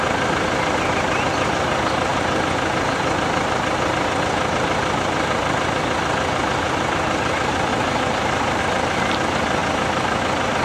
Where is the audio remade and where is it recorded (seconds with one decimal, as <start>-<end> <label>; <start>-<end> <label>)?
0.0-10.6 recorded